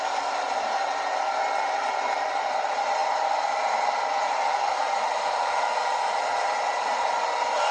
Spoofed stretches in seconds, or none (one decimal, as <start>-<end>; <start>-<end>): none